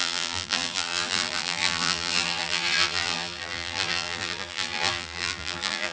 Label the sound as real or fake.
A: fake